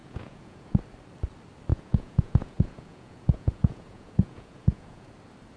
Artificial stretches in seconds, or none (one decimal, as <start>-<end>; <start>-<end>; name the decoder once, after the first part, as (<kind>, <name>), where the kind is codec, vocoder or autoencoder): 0.0-0.8 (vocoder, Vocos); 1.7-5.1

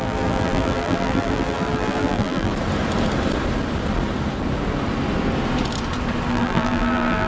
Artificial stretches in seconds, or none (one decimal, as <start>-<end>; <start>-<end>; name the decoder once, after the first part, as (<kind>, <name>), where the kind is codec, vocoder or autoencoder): 0.0-2.5 (vocoder, BigVGAN v2); 6.3-7.3